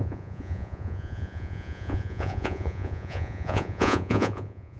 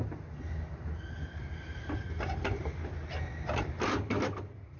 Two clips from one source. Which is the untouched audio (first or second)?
second